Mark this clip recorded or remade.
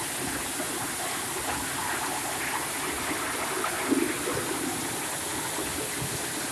recorded